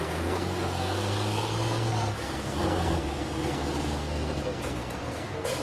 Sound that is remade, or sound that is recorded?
remade